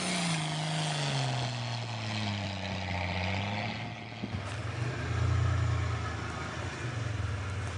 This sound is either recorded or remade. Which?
recorded